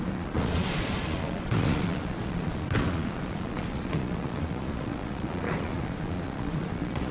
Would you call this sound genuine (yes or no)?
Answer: no